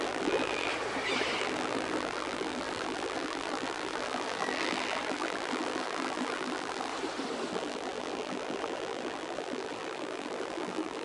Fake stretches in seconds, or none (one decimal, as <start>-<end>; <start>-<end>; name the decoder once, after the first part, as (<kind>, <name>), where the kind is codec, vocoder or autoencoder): 0.0-0.7 (vocoder, BigVGAN v2); 1.4-6.9; 7.5-11.0